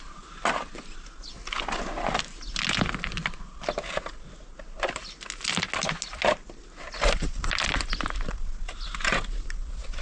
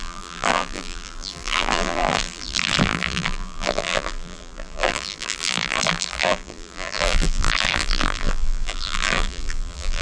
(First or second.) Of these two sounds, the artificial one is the second